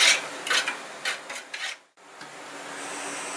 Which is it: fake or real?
real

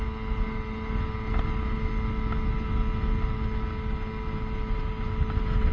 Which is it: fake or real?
real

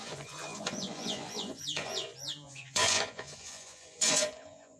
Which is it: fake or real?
fake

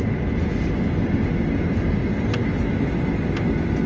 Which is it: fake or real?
real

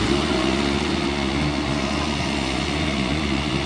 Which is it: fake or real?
fake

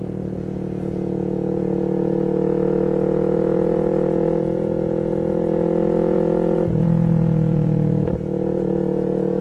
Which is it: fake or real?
fake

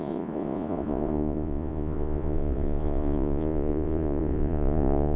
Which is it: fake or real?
fake